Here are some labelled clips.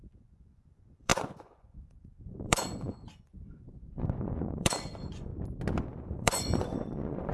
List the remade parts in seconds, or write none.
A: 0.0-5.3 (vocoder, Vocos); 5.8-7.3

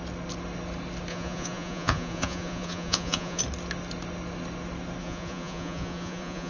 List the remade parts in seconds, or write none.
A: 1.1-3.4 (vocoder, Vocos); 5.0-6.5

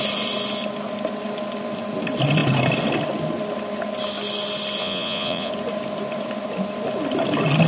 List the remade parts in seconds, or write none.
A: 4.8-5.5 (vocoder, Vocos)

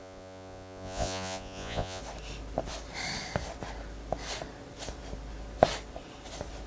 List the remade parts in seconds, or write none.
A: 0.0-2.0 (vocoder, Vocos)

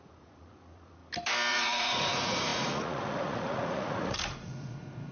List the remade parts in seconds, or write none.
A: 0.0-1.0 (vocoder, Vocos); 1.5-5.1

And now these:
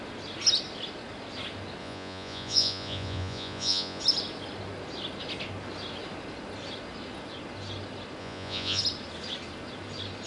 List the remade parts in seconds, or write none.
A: 1.8-4.0 (vocoder, Vocos); 8.2-8.8

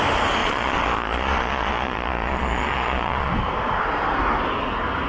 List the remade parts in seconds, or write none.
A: 0.4-3.3 (vocoder, Vocos)

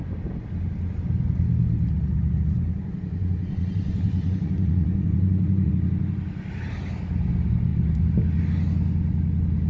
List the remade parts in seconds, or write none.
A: 2.7-5.7 (vocoder, Vocos)